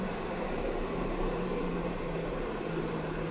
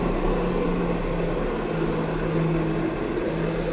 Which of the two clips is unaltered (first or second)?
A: second